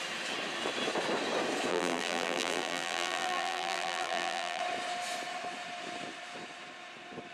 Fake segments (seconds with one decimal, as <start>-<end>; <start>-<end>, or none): 1.7-4.6